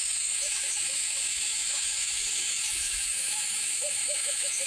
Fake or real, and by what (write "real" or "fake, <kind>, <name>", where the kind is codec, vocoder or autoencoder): fake, autoencoder, DAC-VAE